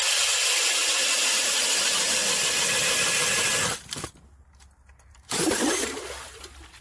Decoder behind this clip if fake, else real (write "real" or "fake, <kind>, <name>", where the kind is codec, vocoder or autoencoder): real